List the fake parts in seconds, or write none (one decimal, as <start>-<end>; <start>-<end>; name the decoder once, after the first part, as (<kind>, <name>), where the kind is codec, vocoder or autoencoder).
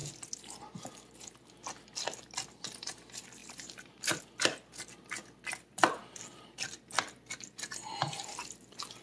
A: 3.4-4.2 (vocoder, BigVGAN v2)